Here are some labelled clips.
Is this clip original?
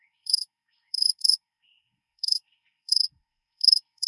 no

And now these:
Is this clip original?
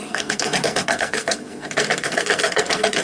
no